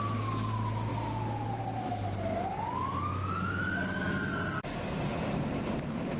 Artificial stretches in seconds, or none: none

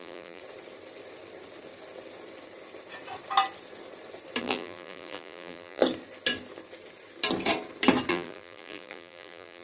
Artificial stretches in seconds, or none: 0.0-0.4; 4.4-5.8; 8.1-9.6

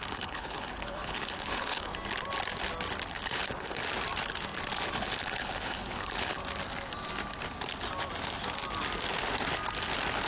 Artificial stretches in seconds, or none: 0.0-1.9; 3.1-3.8; 4.9-6.4